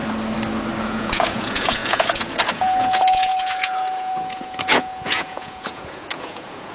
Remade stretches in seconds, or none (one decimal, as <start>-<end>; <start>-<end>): 0.8-6.7

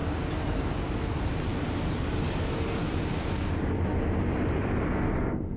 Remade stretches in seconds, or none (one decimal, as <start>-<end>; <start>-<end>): none

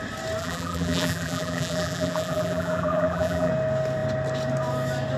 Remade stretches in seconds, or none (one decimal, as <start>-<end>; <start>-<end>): 0.4-3.5

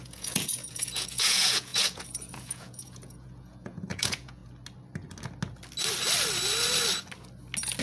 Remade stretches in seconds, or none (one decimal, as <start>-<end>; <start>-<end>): 0.0-4.4

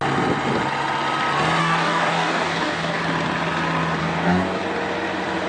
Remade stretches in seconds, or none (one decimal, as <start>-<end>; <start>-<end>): 1.6-3.0; 4.0-4.6